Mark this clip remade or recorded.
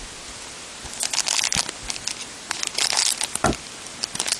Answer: recorded